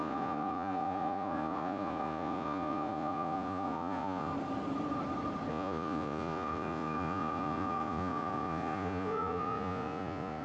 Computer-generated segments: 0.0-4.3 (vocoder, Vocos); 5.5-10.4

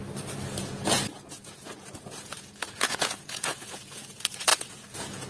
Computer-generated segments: 0.6-5.3 (vocoder, Vocos)

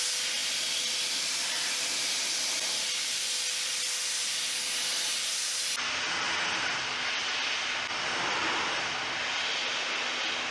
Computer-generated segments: none

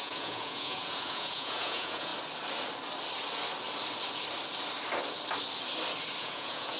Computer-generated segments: 0.0-2.1 (vocoder, Vocos); 6.2-6.8

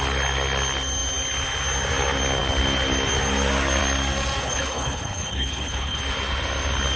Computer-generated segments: 4.4-6.0 (codec, HILCodec)